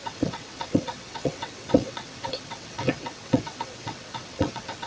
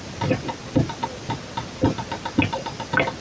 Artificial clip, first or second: first